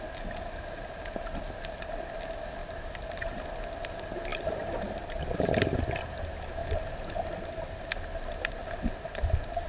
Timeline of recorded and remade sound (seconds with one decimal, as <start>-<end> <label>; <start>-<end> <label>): 0.0-2.6 recorded; 2.6-3.4 remade; 3.4-4.3 recorded; 4.3-5.8 remade; 5.8-9.7 recorded